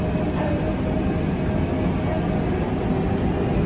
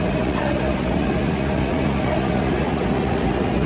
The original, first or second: first